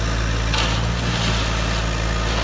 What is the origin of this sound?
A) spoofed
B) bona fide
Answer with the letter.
B